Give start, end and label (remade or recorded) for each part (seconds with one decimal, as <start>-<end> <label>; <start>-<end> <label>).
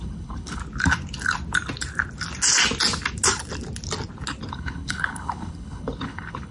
0.0-0.6 remade; 0.6-4.5 recorded; 4.5-6.5 remade